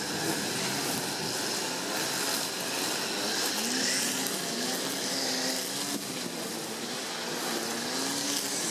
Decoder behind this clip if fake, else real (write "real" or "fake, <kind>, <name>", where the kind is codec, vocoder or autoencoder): real